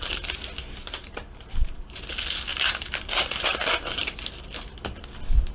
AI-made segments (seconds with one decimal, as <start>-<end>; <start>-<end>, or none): 0.8-2.0; 2.5-4.3